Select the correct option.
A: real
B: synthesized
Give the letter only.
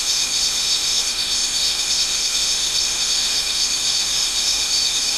B